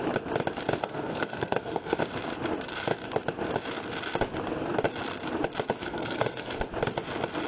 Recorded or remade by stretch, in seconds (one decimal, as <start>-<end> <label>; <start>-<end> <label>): 0.0-0.8 recorded; 0.8-2.0 remade; 2.0-5.8 recorded; 5.8-6.6 remade; 6.6-7.5 recorded